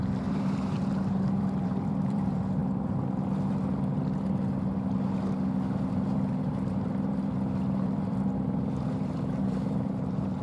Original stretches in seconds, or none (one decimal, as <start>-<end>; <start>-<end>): 2.6-5.9